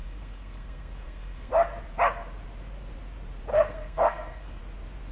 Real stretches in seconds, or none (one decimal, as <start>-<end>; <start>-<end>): 1.5-3.5; 4.6-5.1